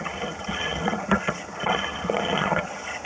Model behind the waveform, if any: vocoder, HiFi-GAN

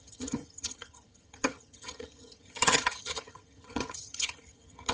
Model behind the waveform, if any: vocoder, HiFi-GAN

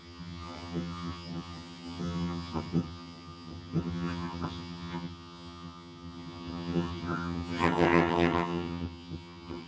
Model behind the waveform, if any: vocoder, HiFi-GAN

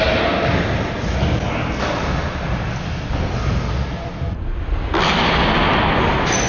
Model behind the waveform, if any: none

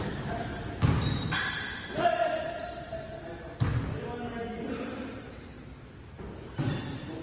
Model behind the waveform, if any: none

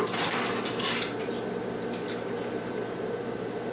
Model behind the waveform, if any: none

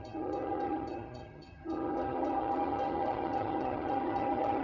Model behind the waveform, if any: vocoder, HiFi-GAN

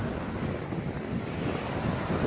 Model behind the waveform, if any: none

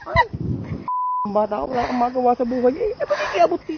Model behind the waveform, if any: none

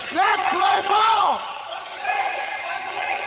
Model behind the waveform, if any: vocoder, HiFi-GAN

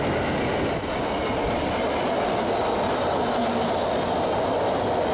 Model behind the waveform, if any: none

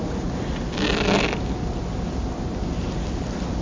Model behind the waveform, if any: none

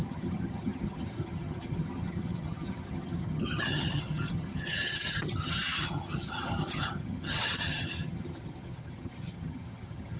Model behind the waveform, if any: vocoder, HiFi-GAN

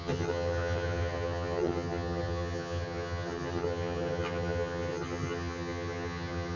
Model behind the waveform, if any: vocoder, HiFi-GAN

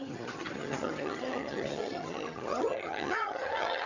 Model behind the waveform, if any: vocoder, HiFi-GAN